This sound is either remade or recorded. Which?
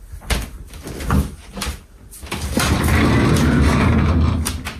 recorded